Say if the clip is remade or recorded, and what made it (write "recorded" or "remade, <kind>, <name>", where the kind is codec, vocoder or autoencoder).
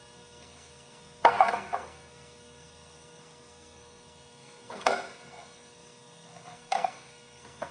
remade, codec, SNAC